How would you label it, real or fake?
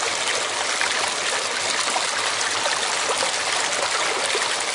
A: real